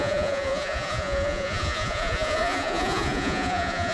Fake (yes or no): yes